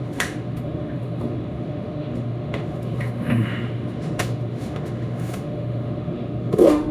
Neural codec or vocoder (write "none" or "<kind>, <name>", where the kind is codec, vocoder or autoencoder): autoencoder, DAC-VAE